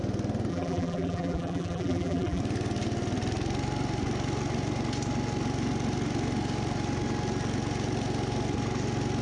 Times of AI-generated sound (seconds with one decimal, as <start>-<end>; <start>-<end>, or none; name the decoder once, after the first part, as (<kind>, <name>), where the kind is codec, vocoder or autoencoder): 0.5-2.4 (vocoder, BigVGAN v2)